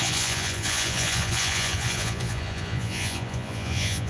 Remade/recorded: remade